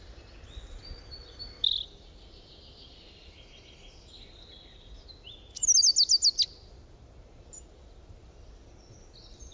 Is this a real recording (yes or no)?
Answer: yes